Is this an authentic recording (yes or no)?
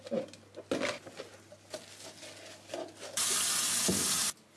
yes